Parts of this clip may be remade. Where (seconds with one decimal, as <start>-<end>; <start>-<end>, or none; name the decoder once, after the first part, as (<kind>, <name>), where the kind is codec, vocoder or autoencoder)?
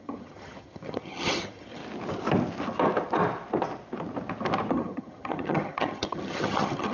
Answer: 0.0-1.8 (vocoder, HiFi-GAN); 4.7-6.9